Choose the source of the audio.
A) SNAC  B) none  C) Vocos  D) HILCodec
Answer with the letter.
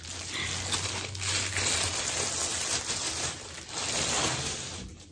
B